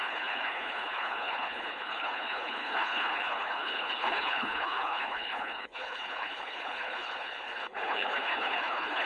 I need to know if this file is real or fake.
fake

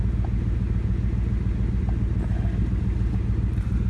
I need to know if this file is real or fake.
real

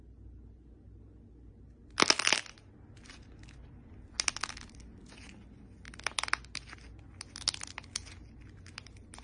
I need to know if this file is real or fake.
real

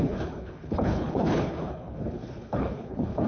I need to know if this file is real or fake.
fake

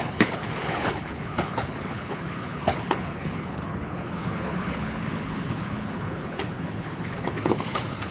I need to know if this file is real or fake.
fake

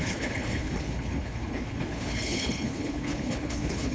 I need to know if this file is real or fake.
fake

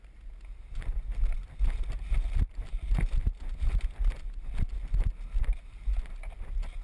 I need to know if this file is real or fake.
real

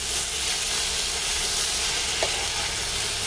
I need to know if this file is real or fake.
real